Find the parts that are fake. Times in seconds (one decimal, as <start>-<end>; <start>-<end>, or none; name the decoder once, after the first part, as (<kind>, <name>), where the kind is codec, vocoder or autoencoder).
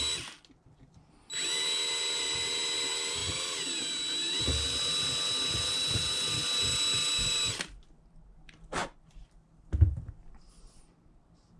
none